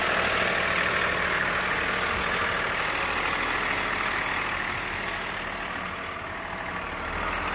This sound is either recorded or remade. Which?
recorded